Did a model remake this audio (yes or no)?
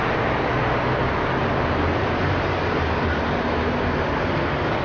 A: no